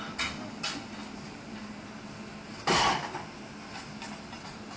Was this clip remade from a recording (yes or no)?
no